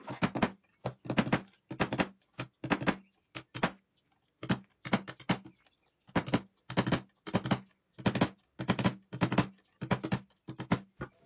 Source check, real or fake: real